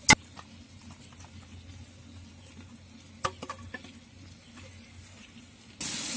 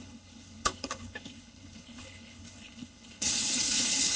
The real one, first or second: first